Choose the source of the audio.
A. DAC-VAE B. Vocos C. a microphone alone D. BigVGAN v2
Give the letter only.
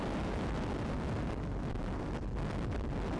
D